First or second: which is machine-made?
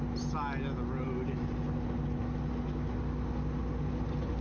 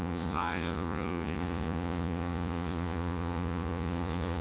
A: second